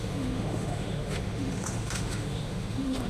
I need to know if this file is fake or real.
fake